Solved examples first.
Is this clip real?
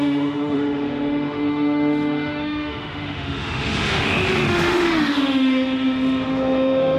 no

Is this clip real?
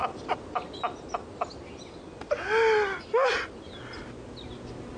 yes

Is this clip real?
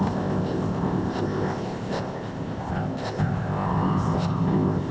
no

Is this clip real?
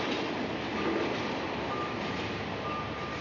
yes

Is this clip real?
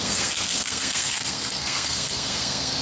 no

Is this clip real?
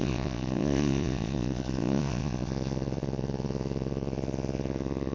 no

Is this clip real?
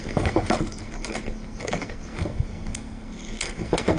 no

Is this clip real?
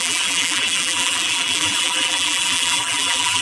no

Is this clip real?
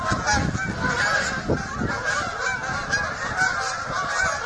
yes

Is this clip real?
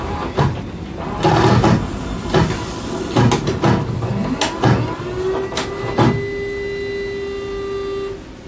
yes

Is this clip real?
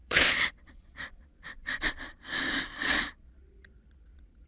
no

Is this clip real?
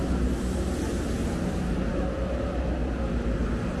yes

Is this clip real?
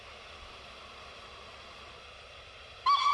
yes